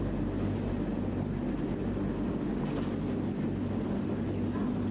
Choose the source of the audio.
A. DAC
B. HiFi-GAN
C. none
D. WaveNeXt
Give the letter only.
C